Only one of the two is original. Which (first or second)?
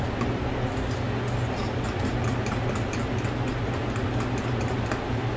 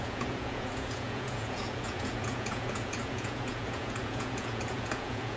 first